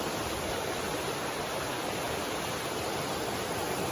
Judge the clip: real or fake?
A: real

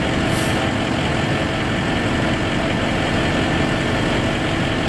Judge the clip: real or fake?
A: real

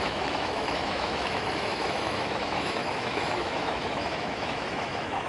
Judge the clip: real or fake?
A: fake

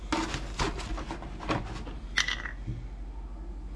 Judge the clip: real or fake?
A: real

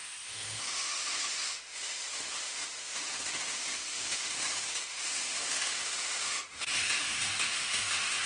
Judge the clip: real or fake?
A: fake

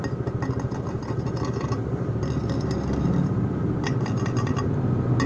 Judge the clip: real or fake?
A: real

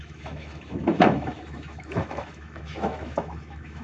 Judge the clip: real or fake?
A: fake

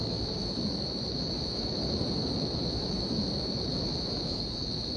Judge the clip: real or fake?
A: fake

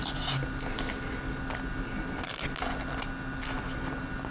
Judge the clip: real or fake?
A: real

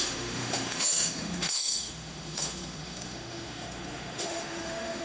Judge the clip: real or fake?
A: fake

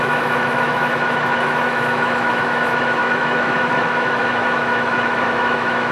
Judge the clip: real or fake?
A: fake